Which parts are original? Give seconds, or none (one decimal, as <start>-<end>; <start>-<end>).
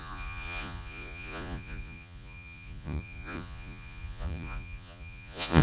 none